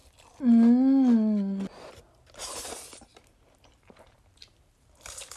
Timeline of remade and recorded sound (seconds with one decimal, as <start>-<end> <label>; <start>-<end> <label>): 0.0-1.9 recorded; 1.9-5.4 remade